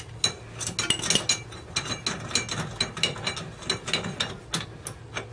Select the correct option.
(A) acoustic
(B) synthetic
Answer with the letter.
A